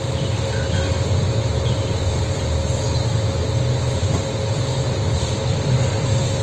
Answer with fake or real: real